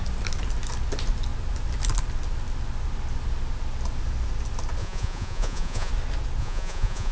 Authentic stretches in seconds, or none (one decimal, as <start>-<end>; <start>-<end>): 0.0-4.8; 5.9-6.4

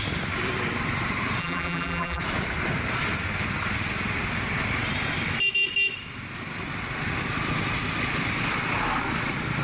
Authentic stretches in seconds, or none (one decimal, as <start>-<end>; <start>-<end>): 0.0-1.4; 2.2-9.6